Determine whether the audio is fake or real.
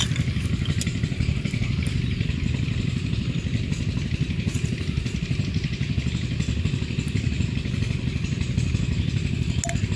real